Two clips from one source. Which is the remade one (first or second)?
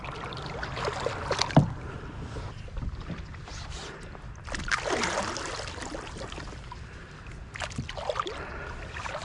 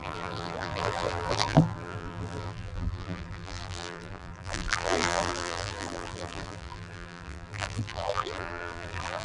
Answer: second